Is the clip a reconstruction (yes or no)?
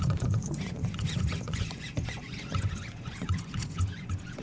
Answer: yes